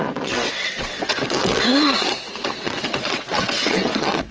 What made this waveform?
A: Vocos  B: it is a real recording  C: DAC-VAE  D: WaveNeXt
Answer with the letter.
D